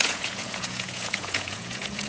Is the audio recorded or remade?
remade